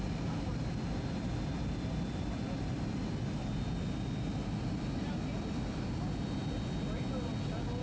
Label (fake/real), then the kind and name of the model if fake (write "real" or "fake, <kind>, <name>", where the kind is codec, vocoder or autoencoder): real